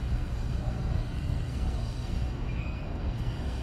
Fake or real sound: fake